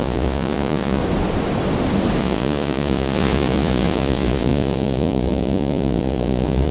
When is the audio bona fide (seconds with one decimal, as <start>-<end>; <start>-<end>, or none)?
1.0-2.2